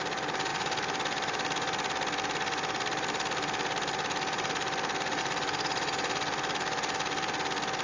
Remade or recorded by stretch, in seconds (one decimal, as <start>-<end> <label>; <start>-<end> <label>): 0.0-7.8 recorded